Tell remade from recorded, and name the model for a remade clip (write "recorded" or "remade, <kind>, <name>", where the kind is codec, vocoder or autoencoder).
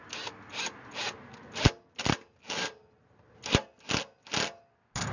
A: recorded